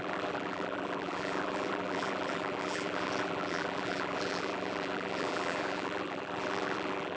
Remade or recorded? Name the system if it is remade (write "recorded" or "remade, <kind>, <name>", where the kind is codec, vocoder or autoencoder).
remade, vocoder, BigVGAN v2